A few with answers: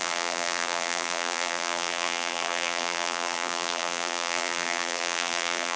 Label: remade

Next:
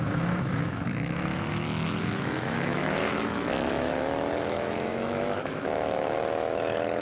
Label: remade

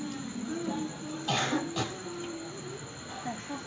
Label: recorded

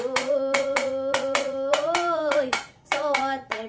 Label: remade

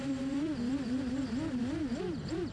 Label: remade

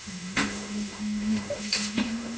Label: remade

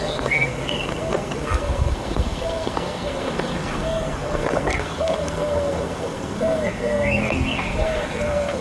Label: remade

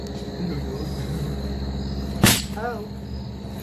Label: recorded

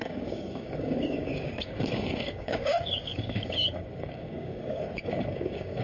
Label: remade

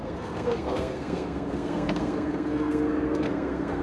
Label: remade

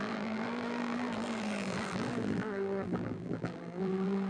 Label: remade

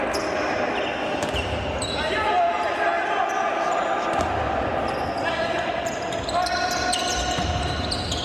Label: recorded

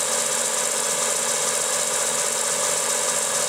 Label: recorded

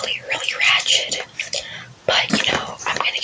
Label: remade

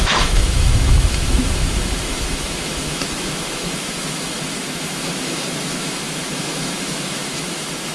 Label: remade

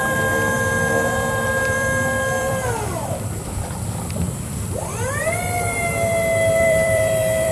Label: remade